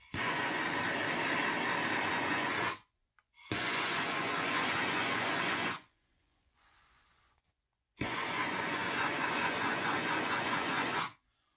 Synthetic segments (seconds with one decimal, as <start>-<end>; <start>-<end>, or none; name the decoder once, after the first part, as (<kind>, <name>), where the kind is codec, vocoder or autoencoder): 0.0-0.6 (vocoder, Vocos); 2.1-11.6